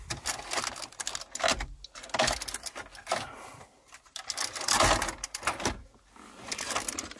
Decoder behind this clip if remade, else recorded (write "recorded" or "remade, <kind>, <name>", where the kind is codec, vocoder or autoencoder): recorded